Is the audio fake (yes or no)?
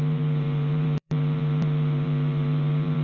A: yes